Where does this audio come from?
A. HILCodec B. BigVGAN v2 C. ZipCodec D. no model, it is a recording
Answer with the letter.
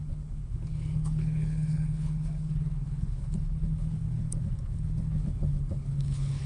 A